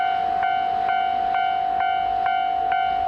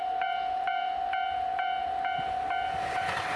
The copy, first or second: second